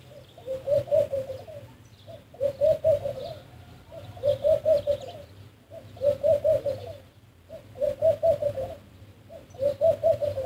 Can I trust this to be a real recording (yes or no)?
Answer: yes